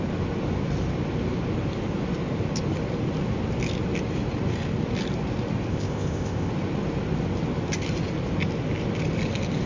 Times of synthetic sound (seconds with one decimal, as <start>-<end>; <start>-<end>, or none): 5.7-6.5